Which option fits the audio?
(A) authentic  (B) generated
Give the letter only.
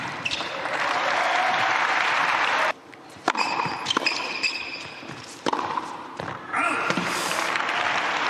B